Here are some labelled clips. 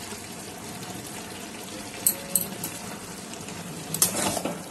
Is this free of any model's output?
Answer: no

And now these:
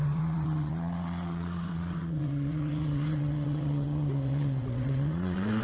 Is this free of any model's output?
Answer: no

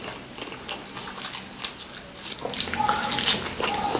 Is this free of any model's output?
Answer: yes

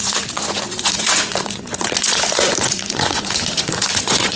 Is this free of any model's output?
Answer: no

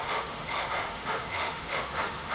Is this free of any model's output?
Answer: no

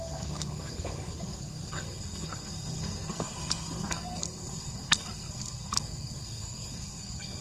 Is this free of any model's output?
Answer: no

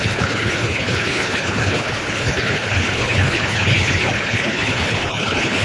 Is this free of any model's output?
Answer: no